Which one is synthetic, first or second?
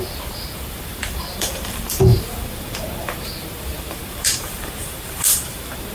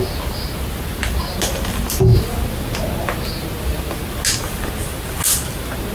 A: first